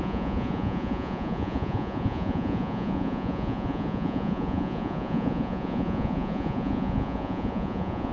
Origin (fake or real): fake